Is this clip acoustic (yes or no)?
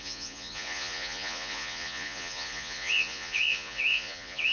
no